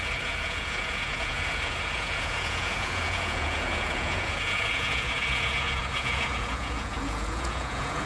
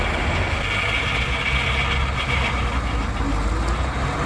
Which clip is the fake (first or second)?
first